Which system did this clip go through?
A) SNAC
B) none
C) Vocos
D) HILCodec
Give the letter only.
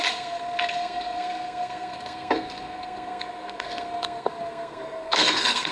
A